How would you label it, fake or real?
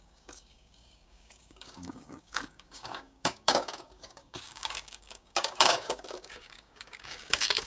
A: fake